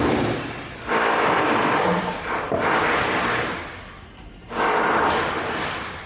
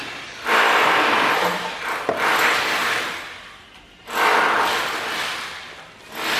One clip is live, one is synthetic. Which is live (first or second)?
second